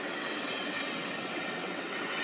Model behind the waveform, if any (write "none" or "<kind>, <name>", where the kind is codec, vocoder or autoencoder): vocoder, WaveNeXt